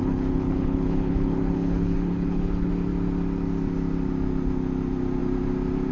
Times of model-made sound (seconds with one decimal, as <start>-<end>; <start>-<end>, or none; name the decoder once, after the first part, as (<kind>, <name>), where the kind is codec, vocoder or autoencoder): 0.0-2.7 (codec, HILCodec)